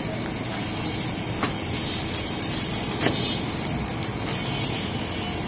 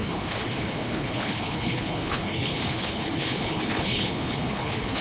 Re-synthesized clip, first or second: second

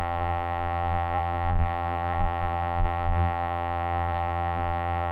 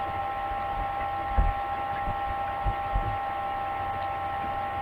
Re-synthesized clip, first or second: first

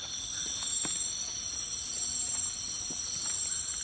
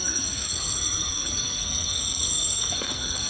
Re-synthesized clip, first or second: second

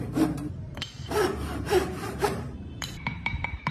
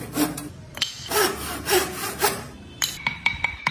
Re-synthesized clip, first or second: first